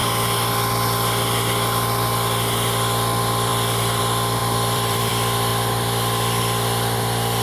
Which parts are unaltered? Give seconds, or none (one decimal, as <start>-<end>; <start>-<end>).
0.0-3.5; 4.0-4.4; 5.1-7.4